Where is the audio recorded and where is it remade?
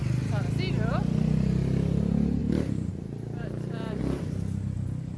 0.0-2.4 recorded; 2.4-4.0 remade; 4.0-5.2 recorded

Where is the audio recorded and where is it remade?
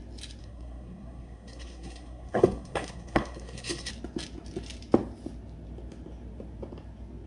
0.0-0.4 recorded; 0.4-3.9 remade; 3.9-7.3 recorded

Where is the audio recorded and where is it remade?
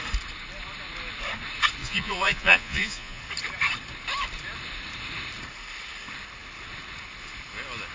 0.0-1.8 recorded; 1.8-3.2 remade; 3.2-7.9 recorded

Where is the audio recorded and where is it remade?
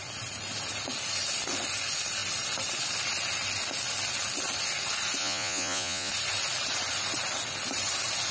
0.0-5.2 recorded; 5.2-6.1 remade; 6.1-8.3 recorded